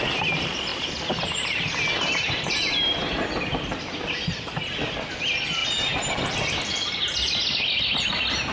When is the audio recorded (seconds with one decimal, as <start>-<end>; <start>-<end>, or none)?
0.0-3.5; 4.9-5.6; 6.1-8.5